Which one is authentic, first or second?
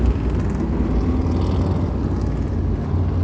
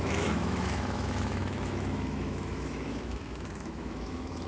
first